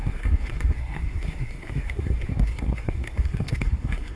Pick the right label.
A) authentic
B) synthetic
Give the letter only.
B